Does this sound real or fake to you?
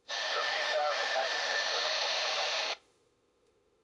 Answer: fake